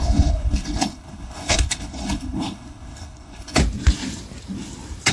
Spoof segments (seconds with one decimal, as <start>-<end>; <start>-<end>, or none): 0.0-3.6